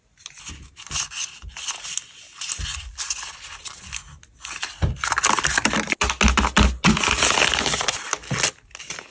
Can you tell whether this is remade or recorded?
recorded